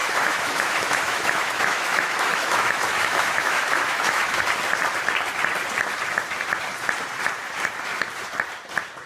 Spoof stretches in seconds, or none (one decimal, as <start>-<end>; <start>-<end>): 0.0-4.4